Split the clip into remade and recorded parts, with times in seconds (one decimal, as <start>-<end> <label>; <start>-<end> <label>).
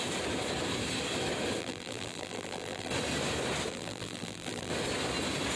0.0-1.6 recorded; 1.6-2.9 remade; 2.9-3.7 recorded; 3.7-4.7 remade; 4.7-5.6 recorded